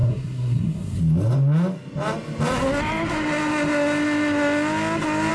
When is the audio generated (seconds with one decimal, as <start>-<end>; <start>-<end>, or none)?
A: 0.0-1.0